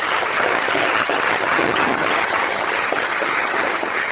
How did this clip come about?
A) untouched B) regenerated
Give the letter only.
B